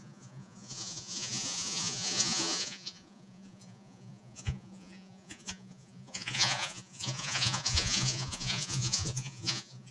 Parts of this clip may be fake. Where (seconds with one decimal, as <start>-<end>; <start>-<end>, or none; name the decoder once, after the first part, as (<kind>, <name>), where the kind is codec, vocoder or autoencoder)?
0.0-9.9 (vocoder, Vocos)